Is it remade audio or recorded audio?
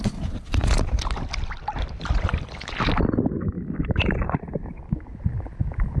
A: recorded